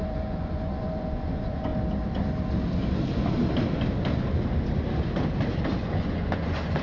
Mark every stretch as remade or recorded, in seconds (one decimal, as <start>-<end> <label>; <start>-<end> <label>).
0.0-1.7 remade; 1.7-5.8 recorded; 5.8-6.8 remade